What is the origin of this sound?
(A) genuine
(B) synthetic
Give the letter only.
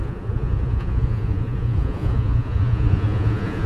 B